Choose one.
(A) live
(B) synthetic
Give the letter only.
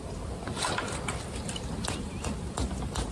A